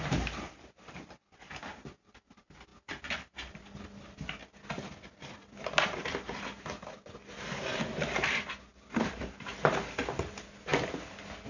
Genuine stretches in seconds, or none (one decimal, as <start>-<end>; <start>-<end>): 0.0-11.5